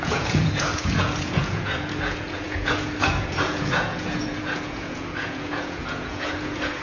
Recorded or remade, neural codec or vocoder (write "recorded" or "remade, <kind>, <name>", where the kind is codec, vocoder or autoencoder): remade, vocoder, Vocos